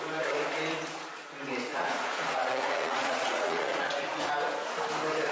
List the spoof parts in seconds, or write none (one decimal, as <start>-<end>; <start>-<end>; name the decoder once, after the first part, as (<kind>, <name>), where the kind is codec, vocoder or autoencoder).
1.7-4.3 (vocoder, Vocos)